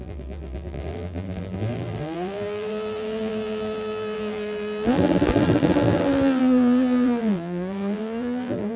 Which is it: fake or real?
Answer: fake